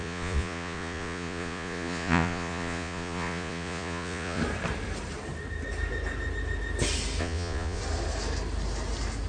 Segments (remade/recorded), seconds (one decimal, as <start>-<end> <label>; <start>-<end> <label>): 0.0-4.4 remade; 4.4-7.2 recorded; 7.2-7.8 remade; 7.8-9.3 recorded